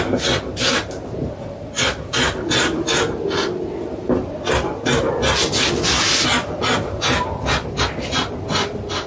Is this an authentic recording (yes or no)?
yes